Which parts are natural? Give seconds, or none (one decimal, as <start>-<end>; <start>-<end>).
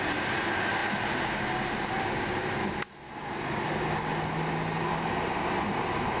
0.0-6.2